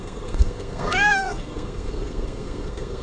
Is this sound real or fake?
fake